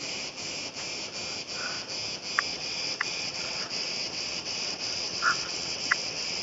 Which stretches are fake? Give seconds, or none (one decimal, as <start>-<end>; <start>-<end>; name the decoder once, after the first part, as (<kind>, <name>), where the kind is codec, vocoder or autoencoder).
2.5-6.4 (vocoder, WaveNeXt)